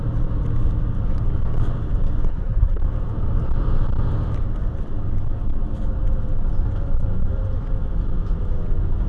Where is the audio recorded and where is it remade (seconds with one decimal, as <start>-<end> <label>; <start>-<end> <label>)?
0.0-2.3 recorded; 2.3-2.8 remade; 2.8-9.1 recorded